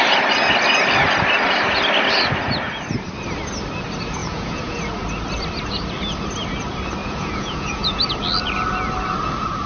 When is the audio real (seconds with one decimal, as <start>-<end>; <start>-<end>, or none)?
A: 0.0-4.2; 4.8-7.0; 8.0-9.7

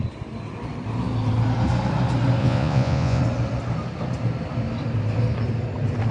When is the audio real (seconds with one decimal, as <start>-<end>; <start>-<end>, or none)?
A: 0.0-2.4; 3.2-6.1

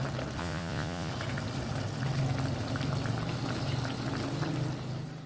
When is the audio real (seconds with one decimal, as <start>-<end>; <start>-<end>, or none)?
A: 0.0-0.4; 1.1-5.3

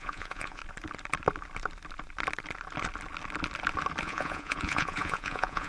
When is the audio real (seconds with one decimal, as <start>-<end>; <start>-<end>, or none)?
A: 0.6-4.0

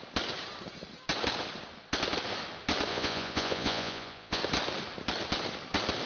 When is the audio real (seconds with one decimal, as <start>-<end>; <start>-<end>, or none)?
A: 0.0-2.9; 4.4-6.1

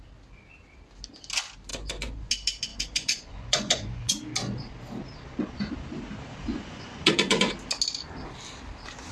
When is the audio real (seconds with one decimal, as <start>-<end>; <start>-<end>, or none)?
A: 0.0-1.7; 2.3-2.7; 4.2-6.5; 7.5-9.1

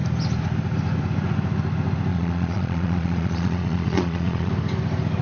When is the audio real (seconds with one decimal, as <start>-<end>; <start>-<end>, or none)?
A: 0.0-2.1; 4.5-5.2

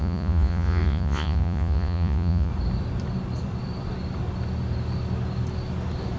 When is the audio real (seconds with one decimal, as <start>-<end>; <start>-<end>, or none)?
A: 2.5-6.2